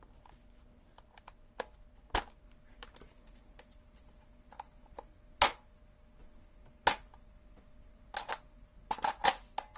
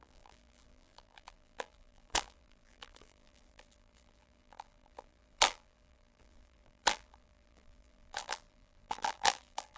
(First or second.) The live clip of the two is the first